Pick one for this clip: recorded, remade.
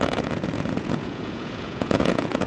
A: remade